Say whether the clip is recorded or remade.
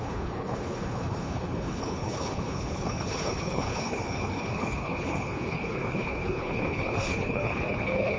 remade